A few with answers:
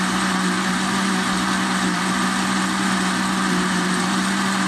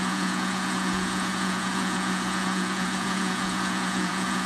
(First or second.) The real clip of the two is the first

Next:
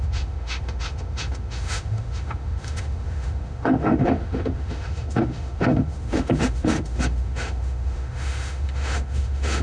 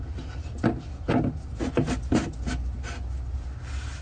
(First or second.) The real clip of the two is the second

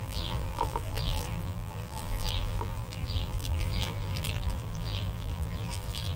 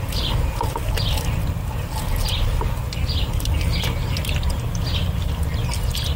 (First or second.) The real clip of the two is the second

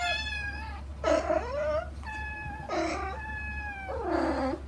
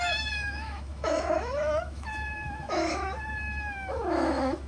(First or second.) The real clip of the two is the first